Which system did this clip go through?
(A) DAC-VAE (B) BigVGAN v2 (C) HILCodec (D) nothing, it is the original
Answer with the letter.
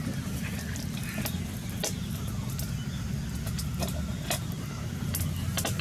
D